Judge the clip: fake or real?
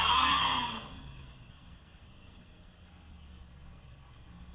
fake